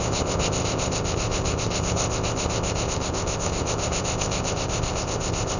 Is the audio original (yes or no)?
no